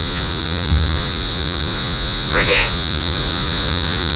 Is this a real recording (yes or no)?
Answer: no